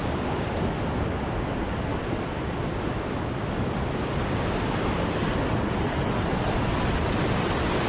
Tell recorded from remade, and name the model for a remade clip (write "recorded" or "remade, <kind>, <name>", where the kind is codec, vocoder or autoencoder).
remade, vocoder, BigVGAN v2